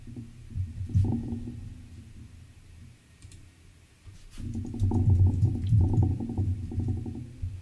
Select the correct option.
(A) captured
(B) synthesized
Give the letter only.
B